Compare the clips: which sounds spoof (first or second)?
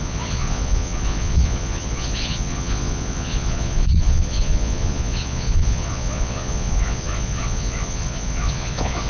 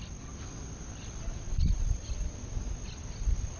first